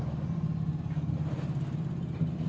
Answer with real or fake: real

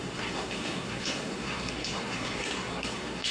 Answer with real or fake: fake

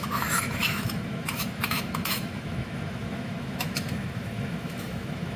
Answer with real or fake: fake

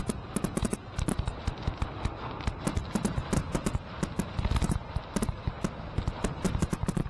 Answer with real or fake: real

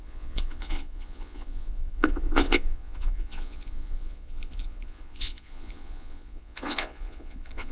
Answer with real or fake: fake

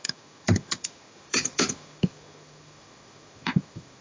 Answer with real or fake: fake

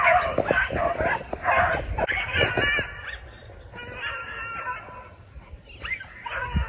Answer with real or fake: real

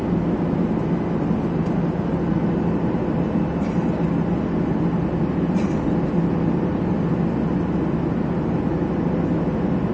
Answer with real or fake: real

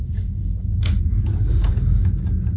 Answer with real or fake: fake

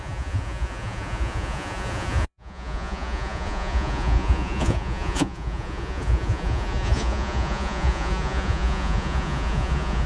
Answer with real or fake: fake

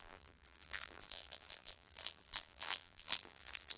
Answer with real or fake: fake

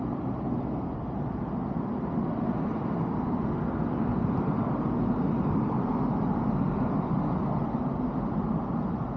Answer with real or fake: real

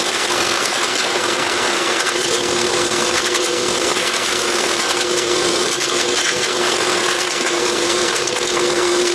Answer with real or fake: fake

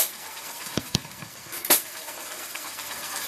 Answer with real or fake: fake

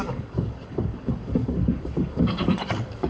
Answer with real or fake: fake